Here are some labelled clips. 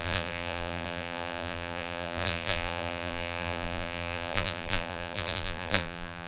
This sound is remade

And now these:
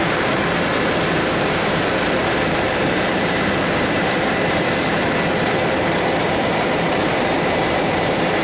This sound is remade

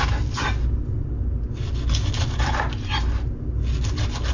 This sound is recorded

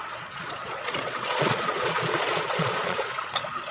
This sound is remade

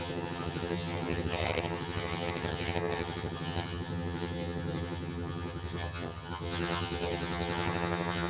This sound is remade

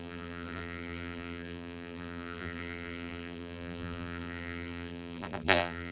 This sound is remade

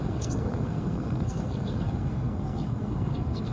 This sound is remade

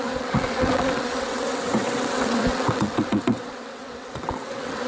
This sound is remade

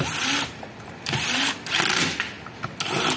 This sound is recorded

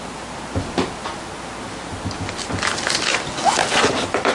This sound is recorded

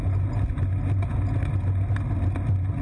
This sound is recorded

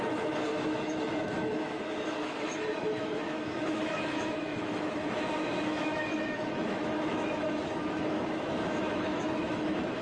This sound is remade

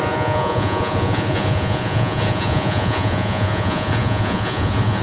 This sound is remade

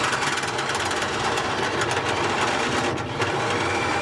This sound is remade